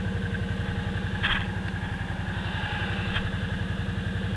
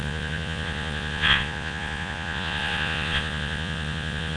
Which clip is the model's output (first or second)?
second